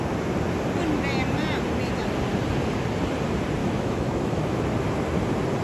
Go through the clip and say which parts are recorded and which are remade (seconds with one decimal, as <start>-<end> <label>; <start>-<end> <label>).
0.0-3.6 recorded; 3.6-4.6 remade; 4.6-5.6 recorded